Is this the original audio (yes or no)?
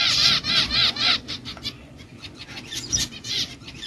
no